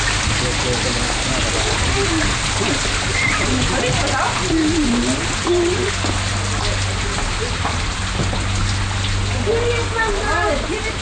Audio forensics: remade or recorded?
recorded